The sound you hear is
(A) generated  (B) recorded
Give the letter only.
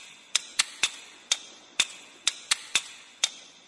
A